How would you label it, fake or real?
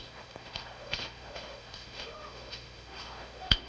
fake